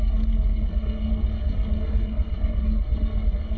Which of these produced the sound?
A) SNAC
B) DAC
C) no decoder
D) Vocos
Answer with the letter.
A